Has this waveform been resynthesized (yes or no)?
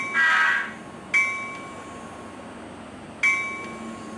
no